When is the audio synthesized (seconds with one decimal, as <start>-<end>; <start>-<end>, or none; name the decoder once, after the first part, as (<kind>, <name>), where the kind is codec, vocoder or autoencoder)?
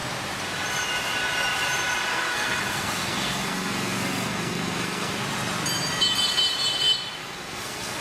2.1-5.1 (codec, SNAC); 7.2-8.0